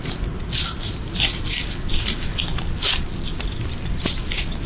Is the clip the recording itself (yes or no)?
yes